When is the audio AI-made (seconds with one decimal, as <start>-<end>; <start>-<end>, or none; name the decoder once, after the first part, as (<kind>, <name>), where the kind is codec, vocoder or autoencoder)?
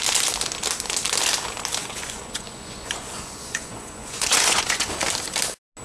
1.8-4.9 (vocoder, Vocos)